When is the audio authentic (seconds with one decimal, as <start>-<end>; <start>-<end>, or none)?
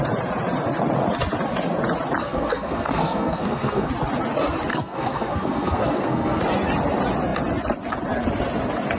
0.0-2.2; 3.9-4.7; 6.4-9.0